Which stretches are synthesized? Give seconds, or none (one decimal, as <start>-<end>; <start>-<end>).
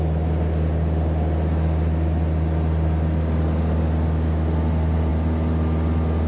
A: none